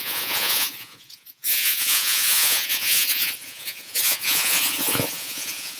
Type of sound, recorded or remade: remade